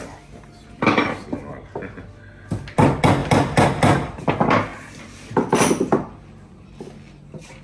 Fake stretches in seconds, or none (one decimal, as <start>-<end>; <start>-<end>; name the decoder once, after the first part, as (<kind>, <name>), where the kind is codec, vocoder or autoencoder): none